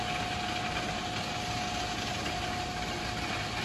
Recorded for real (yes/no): yes